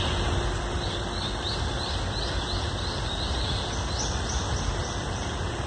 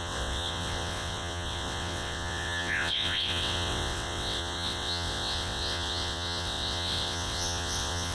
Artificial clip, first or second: second